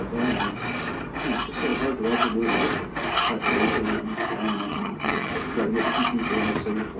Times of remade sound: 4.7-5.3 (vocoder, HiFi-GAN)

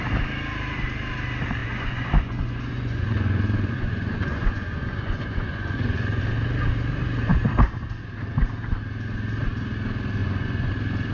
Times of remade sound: 1.6-6.2 (vocoder, Vocos); 10.2-10.7

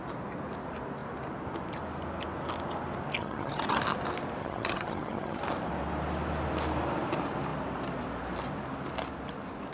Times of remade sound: 3.2-3.8 (vocoder, HiFi-GAN); 4.4-5.4

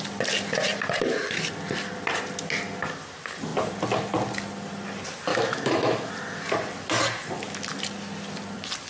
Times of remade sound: 5.3-6.1 (autoencoder, DAC-VAE)